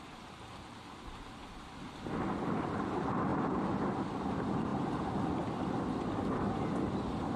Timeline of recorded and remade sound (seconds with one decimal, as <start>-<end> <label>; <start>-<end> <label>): 0.0-7.4 recorded